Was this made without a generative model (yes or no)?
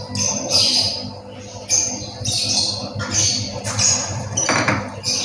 yes